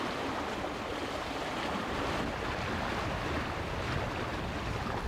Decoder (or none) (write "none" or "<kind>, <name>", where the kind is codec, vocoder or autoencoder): none